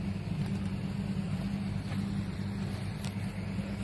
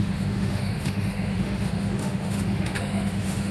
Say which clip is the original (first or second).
first